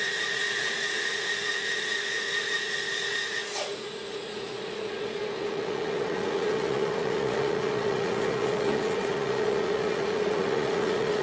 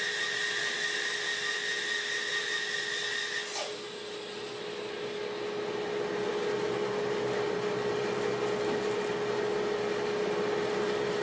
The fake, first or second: first